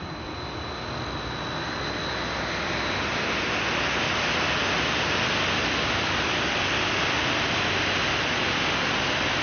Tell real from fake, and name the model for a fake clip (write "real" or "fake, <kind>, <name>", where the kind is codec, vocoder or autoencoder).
real